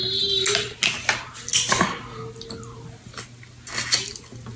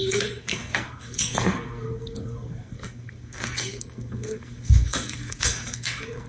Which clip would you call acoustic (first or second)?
first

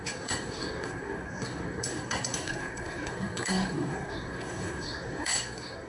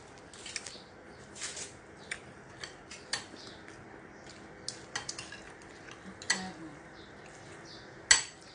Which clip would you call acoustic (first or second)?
second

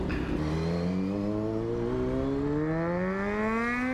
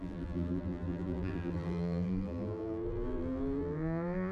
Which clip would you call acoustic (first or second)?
first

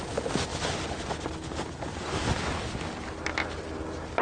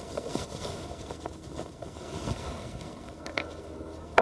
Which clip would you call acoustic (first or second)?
first